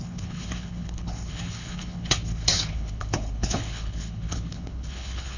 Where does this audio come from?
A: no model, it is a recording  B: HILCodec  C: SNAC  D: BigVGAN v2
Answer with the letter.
B